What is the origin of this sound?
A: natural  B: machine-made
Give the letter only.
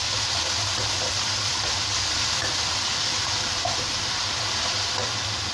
B